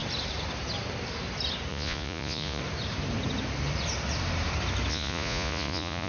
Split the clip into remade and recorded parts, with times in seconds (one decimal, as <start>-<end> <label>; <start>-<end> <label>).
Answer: 0.0-1.7 recorded; 1.7-2.6 remade; 2.6-4.9 recorded; 4.9-6.1 remade